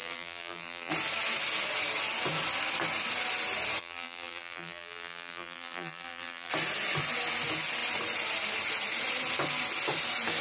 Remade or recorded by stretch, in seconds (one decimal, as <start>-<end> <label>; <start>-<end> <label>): 0.0-0.9 remade; 0.9-3.8 recorded; 3.8-6.5 remade; 6.5-10.4 recorded